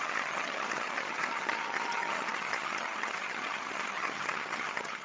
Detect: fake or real fake